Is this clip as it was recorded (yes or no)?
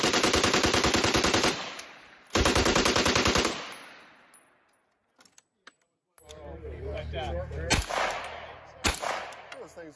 yes